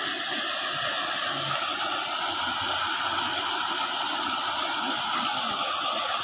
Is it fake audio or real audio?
real